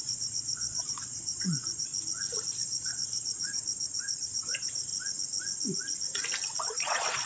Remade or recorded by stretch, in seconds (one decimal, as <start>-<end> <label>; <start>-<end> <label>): 0.0-1.9 remade; 1.9-2.5 recorded; 2.5-4.9 remade; 4.9-6.6 recorded; 6.6-7.3 remade